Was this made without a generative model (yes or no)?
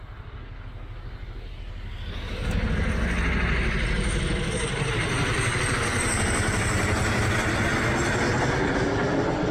yes